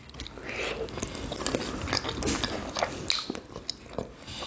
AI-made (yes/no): no